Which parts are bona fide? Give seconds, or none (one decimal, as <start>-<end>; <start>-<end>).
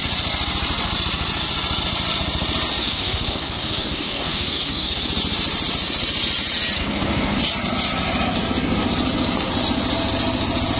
0.0-2.8; 5.0-6.8; 7.4-10.8